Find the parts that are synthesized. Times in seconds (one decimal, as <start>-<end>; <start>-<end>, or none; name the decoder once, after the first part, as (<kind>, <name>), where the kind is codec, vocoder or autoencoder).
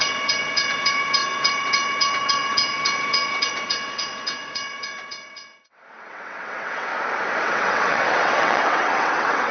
0.0-6.9 (vocoder, WaveNeXt); 7.4-9.5